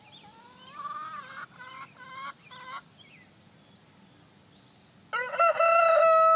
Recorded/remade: recorded